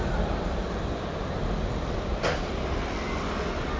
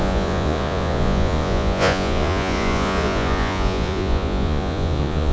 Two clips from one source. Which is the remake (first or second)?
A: second